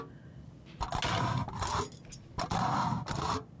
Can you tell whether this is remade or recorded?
recorded